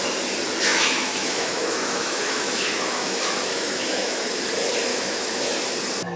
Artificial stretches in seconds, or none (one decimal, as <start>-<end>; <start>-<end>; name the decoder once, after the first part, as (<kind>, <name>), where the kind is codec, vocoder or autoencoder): 0.7-4.4 (autoencoder, DAC-VAE); 4.9-5.5